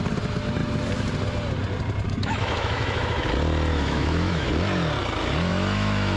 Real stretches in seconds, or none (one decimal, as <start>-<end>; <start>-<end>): 0.0-2.2; 3.3-3.7; 4.5-5.5